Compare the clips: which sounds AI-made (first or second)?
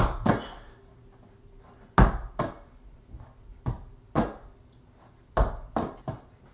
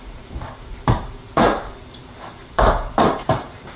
second